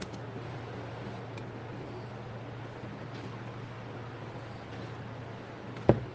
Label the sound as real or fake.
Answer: real